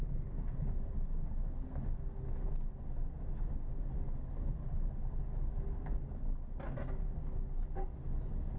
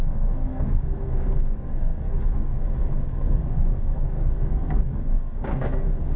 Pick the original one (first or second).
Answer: first